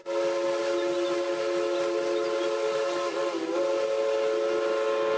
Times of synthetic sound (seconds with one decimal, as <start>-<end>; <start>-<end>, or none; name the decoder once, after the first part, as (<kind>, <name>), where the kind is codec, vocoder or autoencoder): none

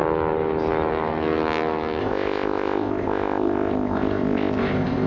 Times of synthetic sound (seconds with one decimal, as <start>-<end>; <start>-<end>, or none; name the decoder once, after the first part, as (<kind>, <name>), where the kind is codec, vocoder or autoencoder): 2.0-5.1 (codec, ZipCodec)

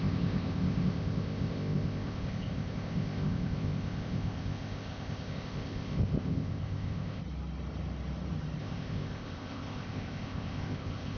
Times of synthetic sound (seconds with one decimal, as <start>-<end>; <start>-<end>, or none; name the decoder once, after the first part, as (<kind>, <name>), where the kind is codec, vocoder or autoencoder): 0.0-7.2 (codec, ZipCodec); 8.6-11.2